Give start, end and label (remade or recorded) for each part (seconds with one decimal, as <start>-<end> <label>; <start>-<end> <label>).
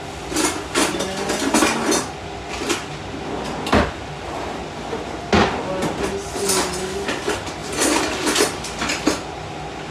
0.0-9.9 recorded